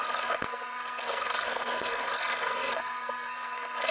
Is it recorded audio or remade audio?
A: remade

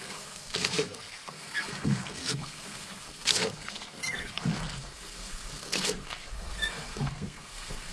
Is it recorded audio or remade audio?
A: remade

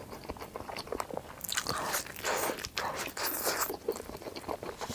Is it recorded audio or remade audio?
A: recorded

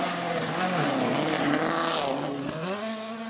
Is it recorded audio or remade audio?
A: recorded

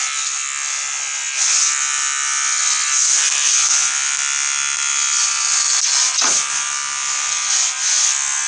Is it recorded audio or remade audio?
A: recorded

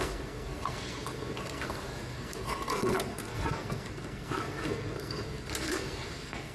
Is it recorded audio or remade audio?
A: remade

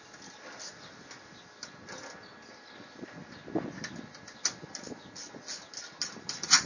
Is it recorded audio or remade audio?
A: recorded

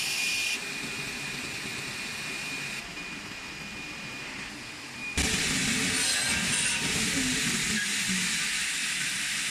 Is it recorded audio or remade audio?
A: recorded